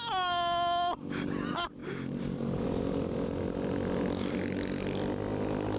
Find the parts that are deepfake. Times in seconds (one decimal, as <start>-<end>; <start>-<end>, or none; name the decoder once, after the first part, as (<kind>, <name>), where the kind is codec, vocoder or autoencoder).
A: none